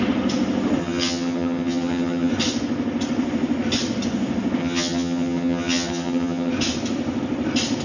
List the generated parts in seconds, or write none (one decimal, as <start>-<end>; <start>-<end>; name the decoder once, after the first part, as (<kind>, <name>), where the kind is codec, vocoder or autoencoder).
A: 0.8-2.3 (vocoder, HiFi-GAN); 4.6-6.5

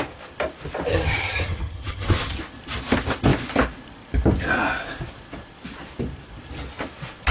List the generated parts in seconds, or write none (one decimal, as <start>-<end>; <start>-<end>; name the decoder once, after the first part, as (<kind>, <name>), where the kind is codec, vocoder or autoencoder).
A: 0.9-2.4 (vocoder, HiFi-GAN)

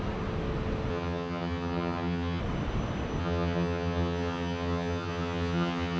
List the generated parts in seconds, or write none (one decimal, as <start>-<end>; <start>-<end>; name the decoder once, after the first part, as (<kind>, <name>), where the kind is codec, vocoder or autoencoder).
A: 0.9-2.4 (vocoder, HiFi-GAN); 3.2-6.0

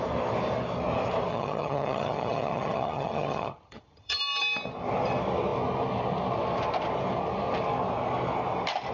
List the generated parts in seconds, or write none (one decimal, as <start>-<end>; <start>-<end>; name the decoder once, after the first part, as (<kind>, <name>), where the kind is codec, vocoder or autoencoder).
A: 1.3-4.2 (vocoder, HiFi-GAN)

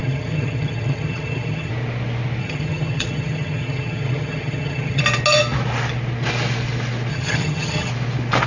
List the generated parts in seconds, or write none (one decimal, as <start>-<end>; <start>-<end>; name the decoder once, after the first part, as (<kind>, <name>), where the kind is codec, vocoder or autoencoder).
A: 0.0-1.7 (vocoder, HiFi-GAN); 2.4-5.0; 7.1-7.9

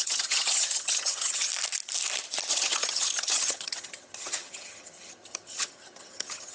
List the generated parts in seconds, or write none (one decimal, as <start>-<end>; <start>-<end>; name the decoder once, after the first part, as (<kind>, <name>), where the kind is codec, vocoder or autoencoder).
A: 0.0-1.5 (vocoder, HiFi-GAN); 2.5-6.5

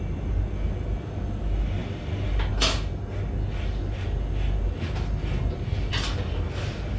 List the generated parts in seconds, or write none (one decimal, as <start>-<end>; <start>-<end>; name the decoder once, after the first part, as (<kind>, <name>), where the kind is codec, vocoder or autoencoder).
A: none

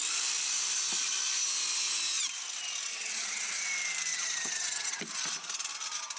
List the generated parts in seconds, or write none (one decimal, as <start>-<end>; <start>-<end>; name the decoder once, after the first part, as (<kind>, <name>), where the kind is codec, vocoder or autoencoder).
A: 2.9-3.6 (vocoder, HiFi-GAN); 4.1-5.0